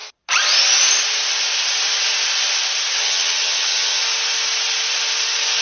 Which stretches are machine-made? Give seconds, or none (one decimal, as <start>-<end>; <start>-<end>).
3.0-4.0